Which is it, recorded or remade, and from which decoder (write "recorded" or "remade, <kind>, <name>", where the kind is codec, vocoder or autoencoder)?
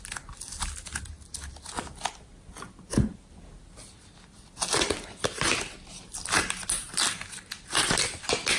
recorded